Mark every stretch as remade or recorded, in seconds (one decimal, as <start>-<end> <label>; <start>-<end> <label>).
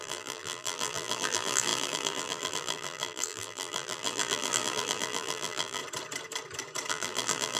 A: 0.0-5.8 remade; 5.8-6.9 recorded; 6.9-7.6 remade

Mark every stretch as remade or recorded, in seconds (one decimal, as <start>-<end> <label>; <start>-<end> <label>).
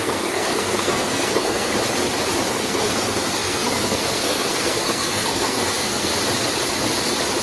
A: 0.0-1.7 remade; 1.7-2.5 recorded; 2.5-6.1 remade; 6.1-7.4 recorded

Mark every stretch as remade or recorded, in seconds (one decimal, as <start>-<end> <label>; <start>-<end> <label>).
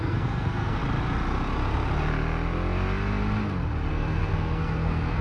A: 0.0-0.8 remade; 0.8-3.9 recorded; 3.9-5.2 remade